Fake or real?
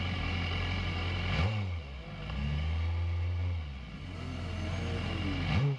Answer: real